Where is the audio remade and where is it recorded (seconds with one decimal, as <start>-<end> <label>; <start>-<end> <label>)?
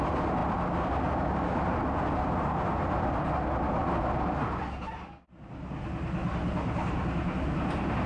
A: 0.0-6.2 recorded; 6.2-8.1 remade